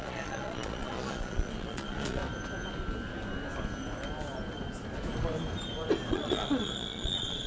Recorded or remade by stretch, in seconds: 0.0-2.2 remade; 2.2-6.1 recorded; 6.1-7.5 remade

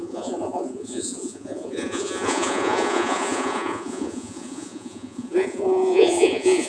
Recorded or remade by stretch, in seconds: 0.0-6.7 remade

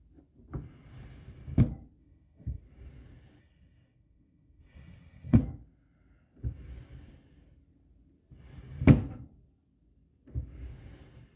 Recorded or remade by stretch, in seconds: 0.0-2.0 recorded; 2.0-2.6 remade; 2.6-3.4 recorded; 3.4-5.4 remade; 5.4-11.4 recorded

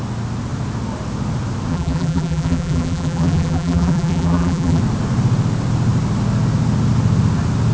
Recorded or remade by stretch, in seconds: 0.0-1.7 recorded; 1.7-4.8 remade; 4.8-7.7 recorded

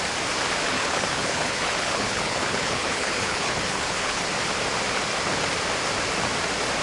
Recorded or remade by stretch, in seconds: 0.0-0.7 recorded; 0.7-4.2 remade; 4.2-6.8 recorded

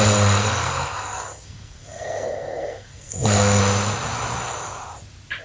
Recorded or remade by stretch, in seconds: 0.0-0.4 recorded; 0.4-3.6 remade; 3.6-5.4 recorded

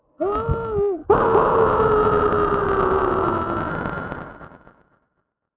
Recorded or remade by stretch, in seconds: 0.0-5.6 recorded

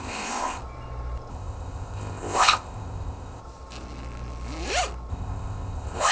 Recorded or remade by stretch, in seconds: 0.0-0.6 remade; 0.6-1.3 recorded; 1.3-3.4 remade; 3.4-5.1 recorded; 5.1-6.1 remade